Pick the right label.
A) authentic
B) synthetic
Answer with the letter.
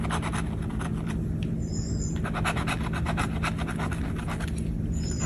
A